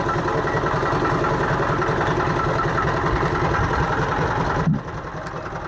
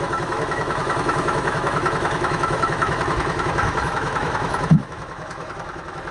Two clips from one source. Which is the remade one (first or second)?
second